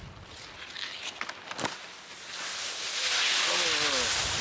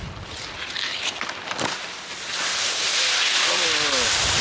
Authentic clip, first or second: first